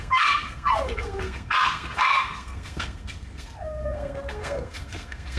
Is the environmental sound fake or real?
fake